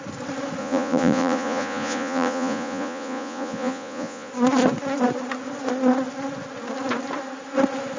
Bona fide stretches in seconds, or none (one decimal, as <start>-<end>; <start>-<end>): 0.0-0.6; 4.3-8.0